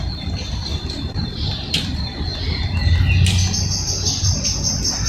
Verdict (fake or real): real